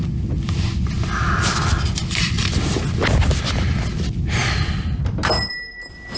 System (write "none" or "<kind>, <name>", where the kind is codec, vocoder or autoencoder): none